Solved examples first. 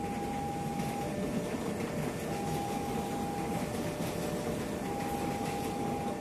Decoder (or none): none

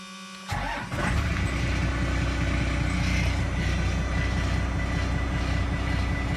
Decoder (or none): none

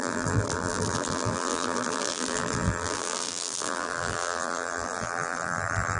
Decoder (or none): vocoder, BigVGAN v2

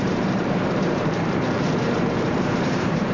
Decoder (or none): vocoder, BigVGAN v2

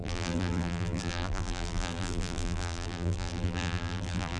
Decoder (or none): vocoder, BigVGAN v2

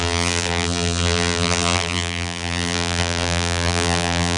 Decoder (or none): vocoder, BigVGAN v2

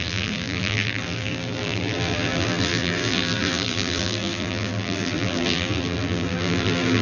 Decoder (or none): vocoder, BigVGAN v2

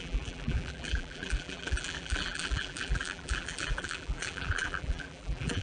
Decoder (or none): vocoder, BigVGAN v2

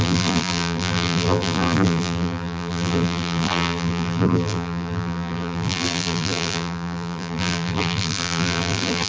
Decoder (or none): vocoder, BigVGAN v2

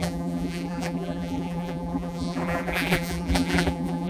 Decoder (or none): vocoder, BigVGAN v2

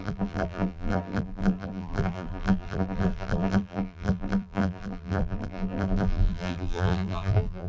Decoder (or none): vocoder, BigVGAN v2